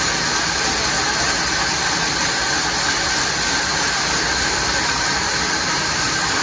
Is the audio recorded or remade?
recorded